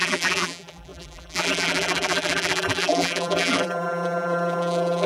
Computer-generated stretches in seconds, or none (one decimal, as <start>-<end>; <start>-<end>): 0.0-5.1